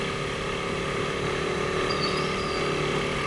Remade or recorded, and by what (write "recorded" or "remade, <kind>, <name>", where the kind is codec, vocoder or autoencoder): recorded